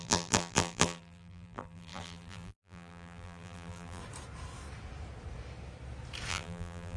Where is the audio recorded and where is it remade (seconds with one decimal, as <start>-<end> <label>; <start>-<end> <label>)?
0.0-4.0 remade; 4.0-6.3 recorded; 6.3-7.0 remade